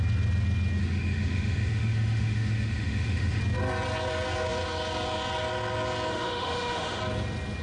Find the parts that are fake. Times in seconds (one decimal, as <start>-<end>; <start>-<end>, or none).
0.8-3.4; 6.1-7.0